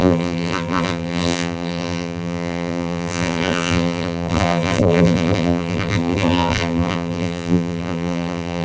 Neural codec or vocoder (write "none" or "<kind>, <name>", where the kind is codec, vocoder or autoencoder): vocoder, BigVGAN v2